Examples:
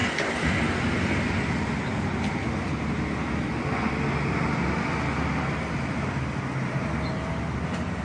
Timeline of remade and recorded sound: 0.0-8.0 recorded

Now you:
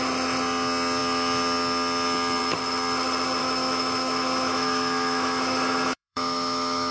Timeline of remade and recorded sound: 0.0-3.4 recorded; 3.4-6.9 remade

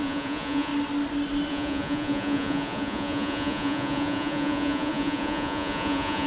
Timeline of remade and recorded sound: 0.0-0.7 remade; 0.7-1.5 recorded; 1.5-6.3 remade

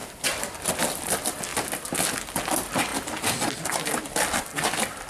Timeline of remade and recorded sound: 0.0-0.7 remade; 0.7-5.1 recorded